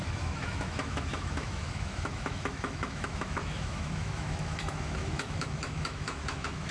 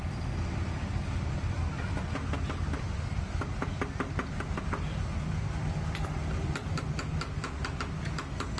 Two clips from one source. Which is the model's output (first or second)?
first